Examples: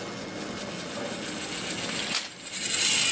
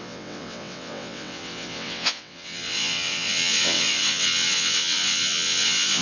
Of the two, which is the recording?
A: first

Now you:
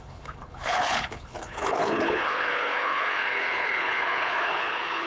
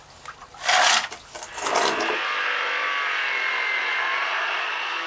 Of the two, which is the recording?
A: second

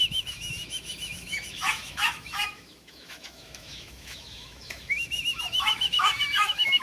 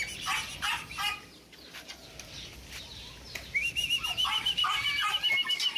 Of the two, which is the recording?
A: second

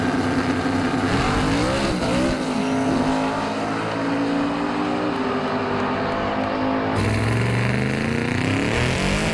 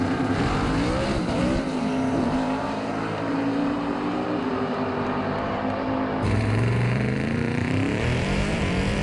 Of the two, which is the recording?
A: first